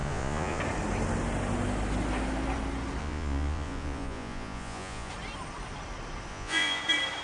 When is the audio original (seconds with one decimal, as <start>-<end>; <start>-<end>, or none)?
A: 0.6-3.0; 5.1-6.3; 6.8-7.2